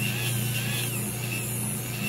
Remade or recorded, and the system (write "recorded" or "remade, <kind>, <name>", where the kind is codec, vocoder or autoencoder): recorded